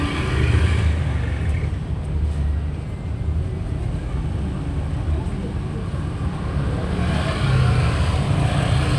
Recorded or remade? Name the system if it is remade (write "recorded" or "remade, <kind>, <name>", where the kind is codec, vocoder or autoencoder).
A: recorded